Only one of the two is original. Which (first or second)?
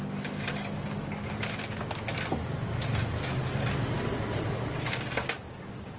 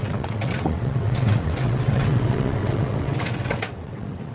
first